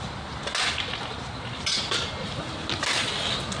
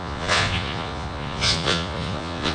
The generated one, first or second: second